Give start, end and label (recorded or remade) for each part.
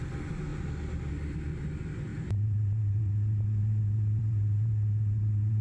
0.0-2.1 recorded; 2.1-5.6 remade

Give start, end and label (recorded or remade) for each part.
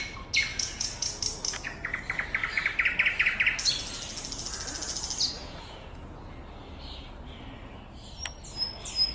0.0-0.5 recorded; 0.5-1.2 remade; 1.2-5.4 recorded; 5.4-6.2 remade; 6.2-9.1 recorded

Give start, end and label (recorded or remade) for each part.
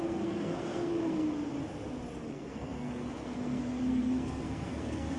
0.0-1.5 remade; 1.5-2.3 recorded; 2.3-5.2 remade